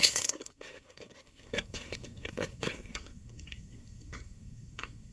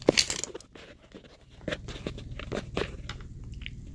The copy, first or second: first